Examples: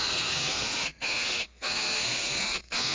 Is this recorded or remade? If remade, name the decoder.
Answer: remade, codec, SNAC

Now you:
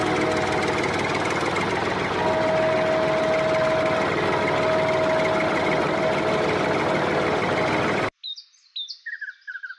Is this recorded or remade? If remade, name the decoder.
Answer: recorded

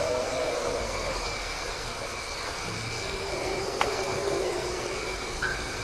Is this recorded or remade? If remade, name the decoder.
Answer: remade, codec, SNAC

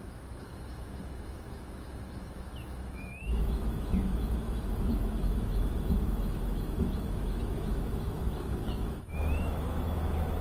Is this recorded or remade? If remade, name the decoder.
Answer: remade, autoencoder, DAC-VAE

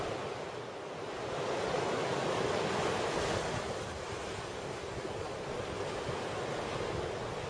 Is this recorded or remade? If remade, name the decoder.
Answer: recorded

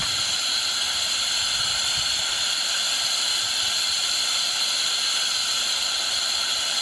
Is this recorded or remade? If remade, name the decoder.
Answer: recorded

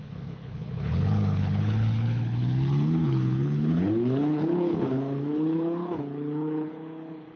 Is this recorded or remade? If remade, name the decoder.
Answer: remade, codec, HILCodec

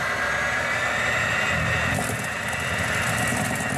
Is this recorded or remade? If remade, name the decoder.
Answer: recorded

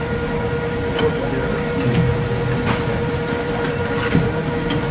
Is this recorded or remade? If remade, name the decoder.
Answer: recorded